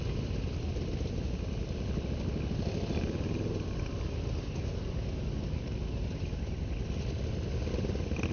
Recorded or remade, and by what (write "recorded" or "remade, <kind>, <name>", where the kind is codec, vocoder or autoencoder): recorded